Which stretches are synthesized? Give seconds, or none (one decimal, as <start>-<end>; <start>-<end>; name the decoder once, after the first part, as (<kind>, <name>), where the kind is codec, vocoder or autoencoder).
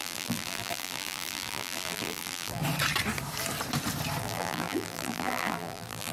0.0-2.6 (vocoder, BigVGAN v2); 4.2-6.1